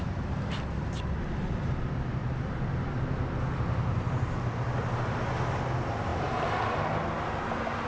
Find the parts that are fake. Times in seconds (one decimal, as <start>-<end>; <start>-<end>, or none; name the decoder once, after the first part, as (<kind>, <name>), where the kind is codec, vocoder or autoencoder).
2.2-2.9 (vocoder, BigVGAN v2)